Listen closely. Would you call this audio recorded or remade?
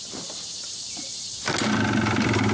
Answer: recorded